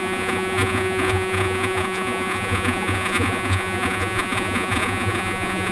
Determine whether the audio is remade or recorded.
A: remade